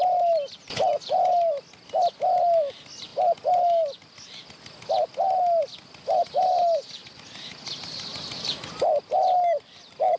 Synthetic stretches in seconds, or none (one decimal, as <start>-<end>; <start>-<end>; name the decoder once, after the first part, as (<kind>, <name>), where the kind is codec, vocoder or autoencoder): none

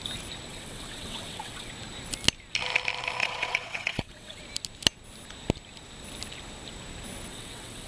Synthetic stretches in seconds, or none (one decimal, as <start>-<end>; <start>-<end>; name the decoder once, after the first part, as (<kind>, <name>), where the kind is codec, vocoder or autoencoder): 0.5-1.7 (vocoder, WaveNeXt); 3.2-4.4; 7.3-7.9

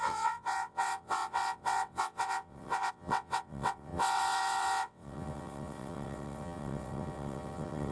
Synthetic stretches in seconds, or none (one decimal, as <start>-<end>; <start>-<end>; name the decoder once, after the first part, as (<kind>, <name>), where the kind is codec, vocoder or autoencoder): 0.0-7.9 (vocoder, WaveNeXt)

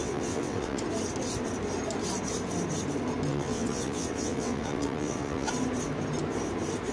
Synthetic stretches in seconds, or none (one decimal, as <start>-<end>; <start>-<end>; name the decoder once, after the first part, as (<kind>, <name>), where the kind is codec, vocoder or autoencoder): 0.0-0.8 (vocoder, WaveNeXt); 3.3-5.5